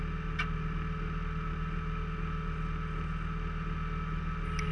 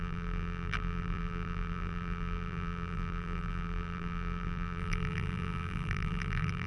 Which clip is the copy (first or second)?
second